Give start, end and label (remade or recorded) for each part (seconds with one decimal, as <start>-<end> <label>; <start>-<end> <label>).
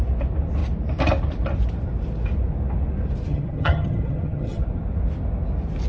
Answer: 0.0-3.3 recorded; 3.3-4.6 remade; 4.6-5.9 recorded